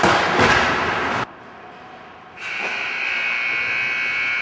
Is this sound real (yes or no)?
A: yes